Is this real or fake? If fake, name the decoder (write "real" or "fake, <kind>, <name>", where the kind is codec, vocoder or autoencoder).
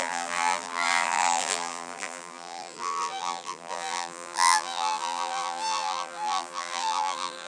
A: fake, vocoder, BigVGAN v2